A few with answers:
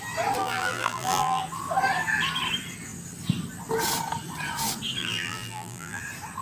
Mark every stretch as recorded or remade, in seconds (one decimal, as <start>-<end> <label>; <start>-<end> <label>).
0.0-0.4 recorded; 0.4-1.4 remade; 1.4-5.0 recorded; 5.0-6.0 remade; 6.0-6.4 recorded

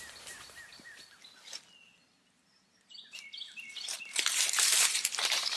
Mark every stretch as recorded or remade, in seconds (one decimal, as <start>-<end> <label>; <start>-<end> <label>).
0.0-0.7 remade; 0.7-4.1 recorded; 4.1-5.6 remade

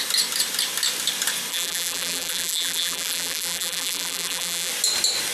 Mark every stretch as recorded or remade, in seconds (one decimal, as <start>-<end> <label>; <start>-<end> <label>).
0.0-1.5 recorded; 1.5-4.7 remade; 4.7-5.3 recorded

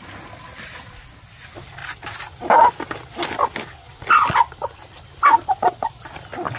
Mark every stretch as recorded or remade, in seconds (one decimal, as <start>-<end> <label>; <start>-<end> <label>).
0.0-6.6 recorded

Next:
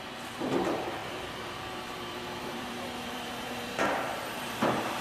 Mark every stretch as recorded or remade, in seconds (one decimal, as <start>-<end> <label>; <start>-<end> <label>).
0.0-5.0 remade

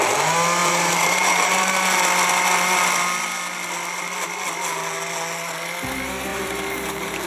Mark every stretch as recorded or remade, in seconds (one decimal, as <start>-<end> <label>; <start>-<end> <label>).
0.0-0.6 recorded; 0.6-1.6 remade; 1.6-6.3 recorded; 6.3-7.3 remade